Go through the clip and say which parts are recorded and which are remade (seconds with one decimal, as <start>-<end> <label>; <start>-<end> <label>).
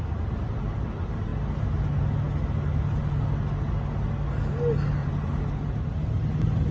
0.0-5.0 recorded; 5.0-5.8 remade; 5.8-6.7 recorded